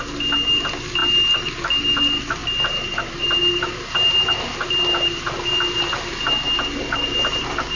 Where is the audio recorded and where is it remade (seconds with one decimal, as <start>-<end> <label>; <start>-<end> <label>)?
0.0-7.8 recorded